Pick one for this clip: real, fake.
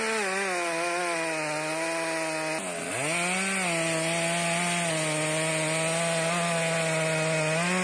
real